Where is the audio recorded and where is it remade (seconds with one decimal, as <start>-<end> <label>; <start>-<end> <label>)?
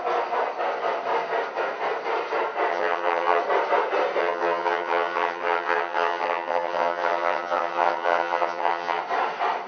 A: 0.0-2.7 recorded; 2.7-3.4 remade; 3.4-4.2 recorded; 4.2-9.0 remade; 9.0-9.7 recorded